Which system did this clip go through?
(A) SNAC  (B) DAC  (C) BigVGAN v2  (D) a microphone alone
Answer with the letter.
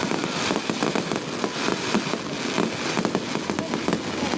D